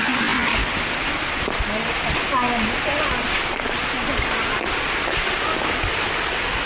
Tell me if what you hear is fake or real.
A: real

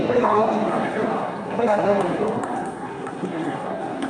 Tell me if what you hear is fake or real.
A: fake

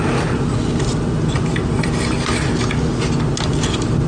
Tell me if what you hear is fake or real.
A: real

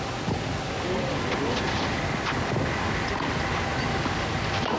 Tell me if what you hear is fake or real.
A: real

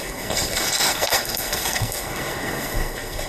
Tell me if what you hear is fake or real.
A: fake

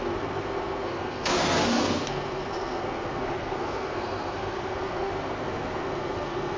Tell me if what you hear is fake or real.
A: fake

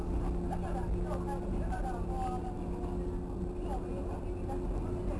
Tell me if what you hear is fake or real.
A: real